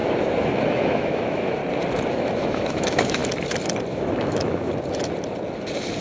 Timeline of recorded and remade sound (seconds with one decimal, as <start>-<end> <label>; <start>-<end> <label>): 0.0-1.6 remade; 1.6-2.1 recorded; 2.1-3.2 remade; 3.2-3.9 recorded; 3.9-4.7 remade; 4.7-6.0 recorded